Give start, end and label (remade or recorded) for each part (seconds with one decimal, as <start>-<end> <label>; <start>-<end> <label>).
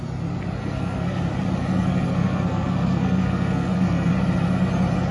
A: 0.0-0.6 recorded; 0.6-1.2 remade; 1.2-1.6 recorded; 1.6-4.1 remade; 4.1-5.1 recorded